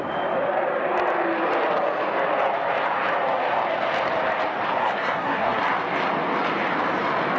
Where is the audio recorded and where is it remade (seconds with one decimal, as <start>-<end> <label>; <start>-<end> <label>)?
0.0-4.8 recorded; 4.8-5.6 remade; 5.6-7.4 recorded

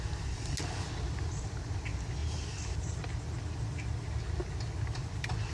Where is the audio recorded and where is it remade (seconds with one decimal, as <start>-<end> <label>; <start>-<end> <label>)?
0.0-5.5 recorded

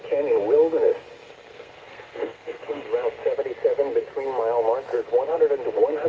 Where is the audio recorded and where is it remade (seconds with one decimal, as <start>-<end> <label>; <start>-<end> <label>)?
0.0-1.5 recorded; 1.5-2.8 remade; 2.8-6.1 recorded

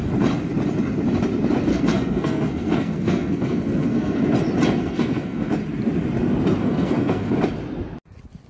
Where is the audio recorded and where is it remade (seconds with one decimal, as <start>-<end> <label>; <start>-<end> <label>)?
0.0-1.7 recorded; 1.7-4.2 remade; 4.2-4.8 recorded; 4.8-5.5 remade; 5.5-6.6 recorded; 6.6-7.3 remade; 7.3-8.5 recorded

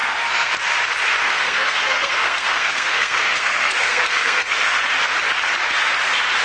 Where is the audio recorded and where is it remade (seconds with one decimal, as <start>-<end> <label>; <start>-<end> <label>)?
0.0-0.5 remade; 0.5-1.3 recorded; 1.3-4.8 remade; 4.8-6.4 recorded